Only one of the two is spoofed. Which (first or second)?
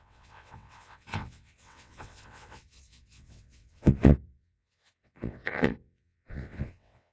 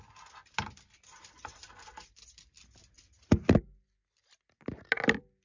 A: first